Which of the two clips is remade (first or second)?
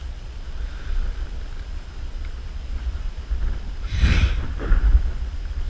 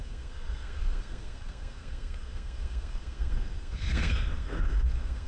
second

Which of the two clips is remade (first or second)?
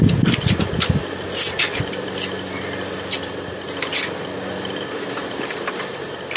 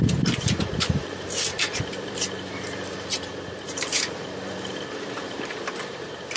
second